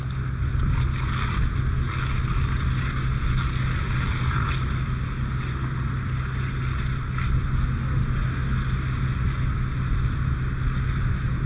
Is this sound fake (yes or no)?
no